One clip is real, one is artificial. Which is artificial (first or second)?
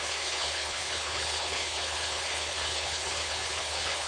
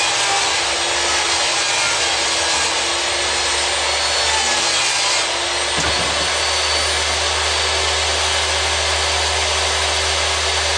first